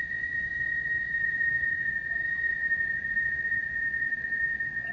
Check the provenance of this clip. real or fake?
fake